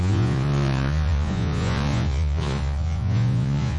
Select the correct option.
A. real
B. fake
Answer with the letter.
B